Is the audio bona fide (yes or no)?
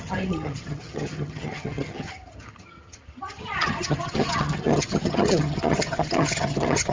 no